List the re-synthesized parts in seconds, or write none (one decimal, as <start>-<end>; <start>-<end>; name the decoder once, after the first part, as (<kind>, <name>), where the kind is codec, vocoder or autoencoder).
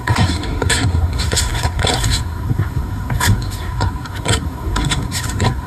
0.0-5.7 (codec, SNAC)